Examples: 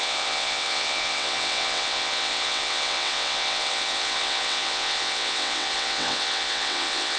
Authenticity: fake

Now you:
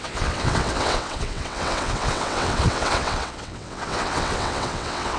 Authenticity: fake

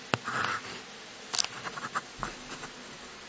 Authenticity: real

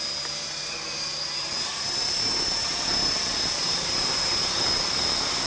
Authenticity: real